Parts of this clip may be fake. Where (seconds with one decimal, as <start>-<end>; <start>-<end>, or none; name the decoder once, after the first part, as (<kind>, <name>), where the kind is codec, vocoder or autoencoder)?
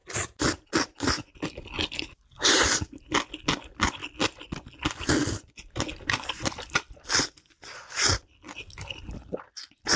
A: none